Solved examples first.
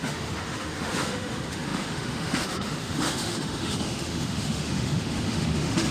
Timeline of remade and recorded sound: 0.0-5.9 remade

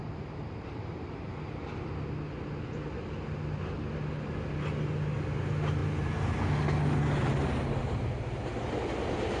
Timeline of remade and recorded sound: 0.0-1.3 remade; 1.3-5.8 recorded; 5.8-6.4 remade; 6.4-7.8 recorded; 7.8-8.5 remade; 8.5-9.4 recorded

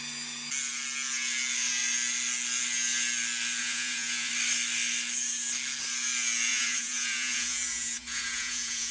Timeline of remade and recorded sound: 0.0-3.6 recorded; 3.6-4.3 remade; 4.3-6.5 recorded; 6.5-8.9 remade

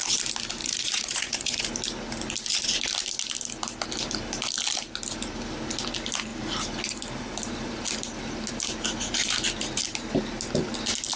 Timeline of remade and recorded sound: 0.0-0.6 recorded; 0.6-1.6 remade; 1.6-11.2 recorded

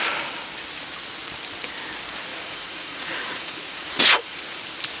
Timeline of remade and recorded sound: 0.0-2.3 recorded; 2.3-4.6 remade; 4.6-5.0 recorded

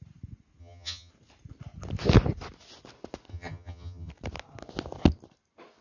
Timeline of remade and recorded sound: 0.0-0.6 recorded; 0.6-1.1 remade; 1.1-3.3 recorded; 3.3-4.1 remade; 4.1-5.8 recorded